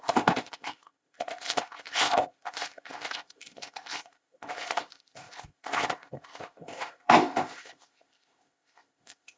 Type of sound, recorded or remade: remade